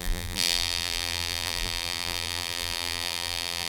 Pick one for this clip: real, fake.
fake